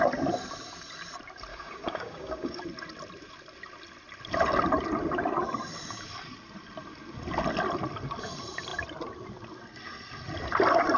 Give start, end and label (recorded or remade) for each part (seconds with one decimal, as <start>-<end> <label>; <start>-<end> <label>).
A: 0.0-1.5 recorded; 1.5-2.6 remade; 2.6-11.0 recorded